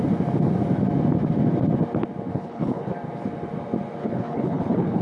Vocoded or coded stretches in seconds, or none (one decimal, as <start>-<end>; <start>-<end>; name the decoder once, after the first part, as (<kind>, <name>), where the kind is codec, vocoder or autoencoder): 2.3-2.9 (codec, HILCodec); 4.0-5.0